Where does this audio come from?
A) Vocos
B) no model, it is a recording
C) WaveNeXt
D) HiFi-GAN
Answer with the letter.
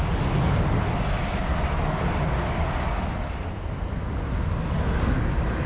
B